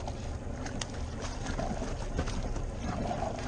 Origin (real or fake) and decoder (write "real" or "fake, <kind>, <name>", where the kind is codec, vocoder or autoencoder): real